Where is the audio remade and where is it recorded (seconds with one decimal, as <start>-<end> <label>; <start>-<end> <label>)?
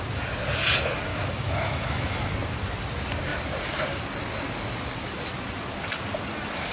0.0-1.1 recorded; 1.1-2.3 remade; 2.3-6.7 recorded